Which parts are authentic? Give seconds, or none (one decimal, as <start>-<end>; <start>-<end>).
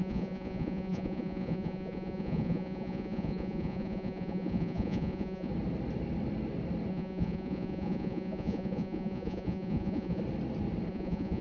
5.5-6.9; 10.2-10.9